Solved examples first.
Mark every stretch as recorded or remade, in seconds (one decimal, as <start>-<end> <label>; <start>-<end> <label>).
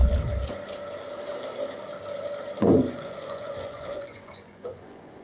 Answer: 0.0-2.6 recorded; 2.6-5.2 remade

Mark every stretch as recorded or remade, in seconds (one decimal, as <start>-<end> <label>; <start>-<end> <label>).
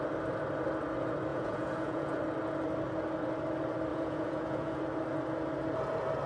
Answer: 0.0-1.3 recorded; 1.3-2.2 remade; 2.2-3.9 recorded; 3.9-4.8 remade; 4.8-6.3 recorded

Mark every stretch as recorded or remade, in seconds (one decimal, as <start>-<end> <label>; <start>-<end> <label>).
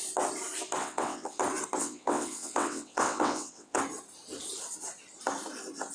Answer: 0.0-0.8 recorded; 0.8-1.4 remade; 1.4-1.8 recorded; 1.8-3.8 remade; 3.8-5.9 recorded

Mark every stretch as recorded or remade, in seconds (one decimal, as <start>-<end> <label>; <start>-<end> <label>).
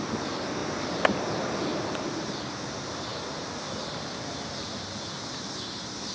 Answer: 0.0-6.1 recorded